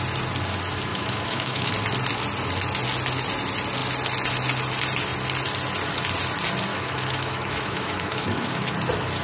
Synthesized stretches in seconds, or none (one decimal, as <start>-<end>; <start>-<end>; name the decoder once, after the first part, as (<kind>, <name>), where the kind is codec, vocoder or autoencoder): 0.9-1.7 (autoencoder, DAC-VAE); 6.7-8.7